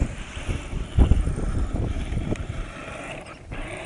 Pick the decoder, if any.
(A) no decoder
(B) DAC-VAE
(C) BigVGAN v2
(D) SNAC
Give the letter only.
C